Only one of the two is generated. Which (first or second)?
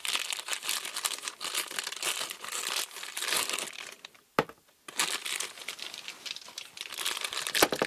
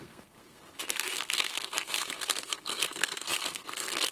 second